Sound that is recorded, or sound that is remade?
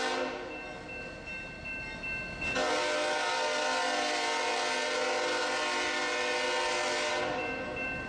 recorded